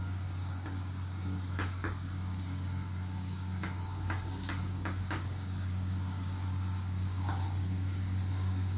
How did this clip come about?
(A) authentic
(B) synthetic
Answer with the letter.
B